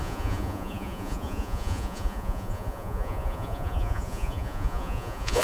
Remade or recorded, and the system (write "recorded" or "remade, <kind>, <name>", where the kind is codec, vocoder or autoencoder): remade, vocoder, Vocos